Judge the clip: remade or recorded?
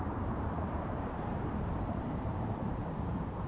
remade